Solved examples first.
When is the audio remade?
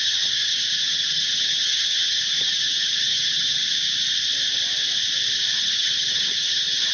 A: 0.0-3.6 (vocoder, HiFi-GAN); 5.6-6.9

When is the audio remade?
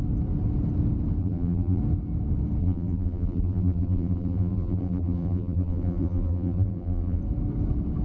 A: 1.2-1.8 (vocoder, BigVGAN v2); 2.6-7.2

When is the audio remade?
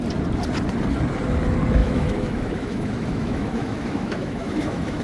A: 1.8-5.0 (autoencoder, DAC-VAE)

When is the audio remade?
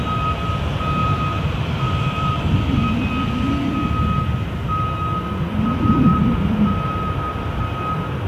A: 1.0-3.1 (vocoder, BigVGAN v2); 6.1-7.3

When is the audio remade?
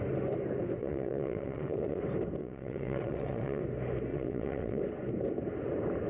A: 0.8-2.0 (vocoder, WaveNeXt); 2.4-3.6; 4.1-4.8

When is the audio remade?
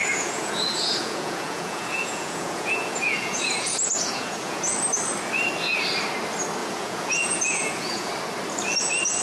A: 0.0-4.8 (vocoder, Vocos); 6.6-8.1